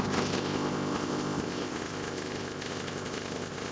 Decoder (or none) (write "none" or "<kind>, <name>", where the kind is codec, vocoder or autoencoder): codec, ZipCodec